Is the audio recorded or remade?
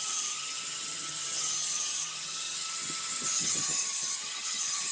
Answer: remade